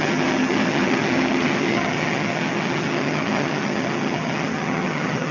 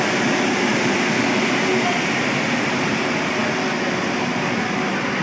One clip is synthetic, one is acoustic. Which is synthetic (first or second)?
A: first